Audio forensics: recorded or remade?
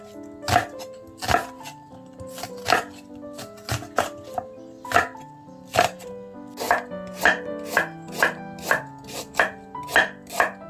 recorded